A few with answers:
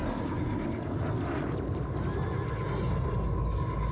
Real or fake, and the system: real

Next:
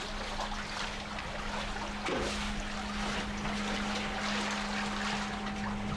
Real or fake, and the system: real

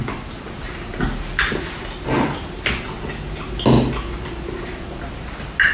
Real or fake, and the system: real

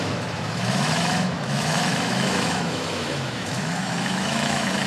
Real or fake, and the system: fake, autoencoder, DAC-VAE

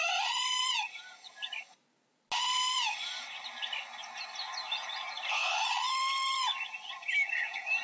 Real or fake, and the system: real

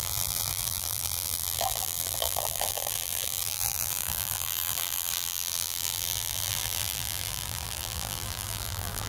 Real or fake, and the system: fake, vocoder, BigVGAN v2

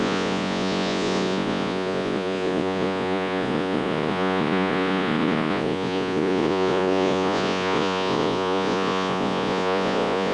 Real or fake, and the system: fake, vocoder, Vocos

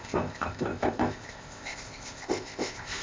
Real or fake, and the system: fake, codec, ZipCodec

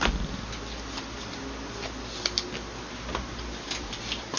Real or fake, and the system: real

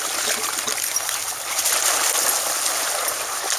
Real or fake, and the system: real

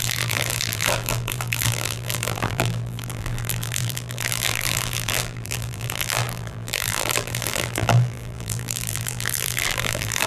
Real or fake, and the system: fake, vocoder, BigVGAN v2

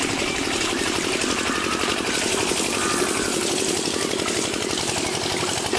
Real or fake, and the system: real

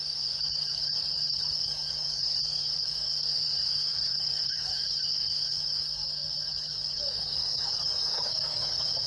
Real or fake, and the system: fake, codec, DAC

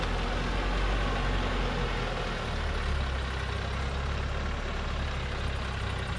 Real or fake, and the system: real